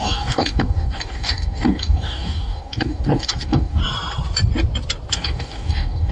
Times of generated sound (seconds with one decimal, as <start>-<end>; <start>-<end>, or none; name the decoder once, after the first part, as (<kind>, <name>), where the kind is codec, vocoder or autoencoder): 0.0-3.8 (codec, DAC); 5.1-6.1